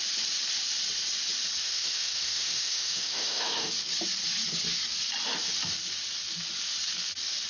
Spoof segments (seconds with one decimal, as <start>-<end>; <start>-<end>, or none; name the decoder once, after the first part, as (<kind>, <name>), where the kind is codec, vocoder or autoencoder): 1.6-3.7 (autoencoder, DAC-VAE)